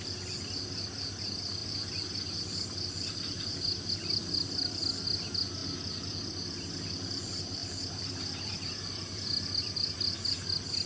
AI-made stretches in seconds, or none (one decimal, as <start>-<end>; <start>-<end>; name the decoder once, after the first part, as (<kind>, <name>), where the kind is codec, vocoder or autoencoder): none